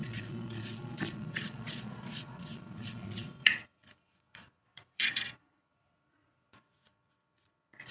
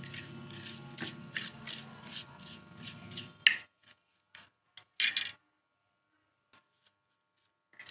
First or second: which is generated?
first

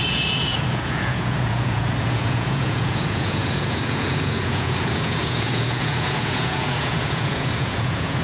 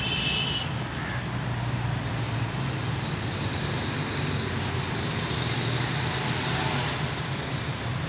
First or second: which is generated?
first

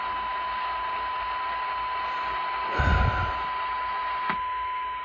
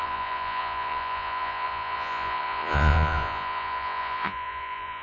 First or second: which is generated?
second